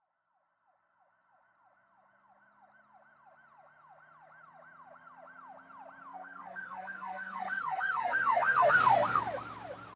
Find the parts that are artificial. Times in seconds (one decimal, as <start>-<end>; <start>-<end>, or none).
6.1-9.2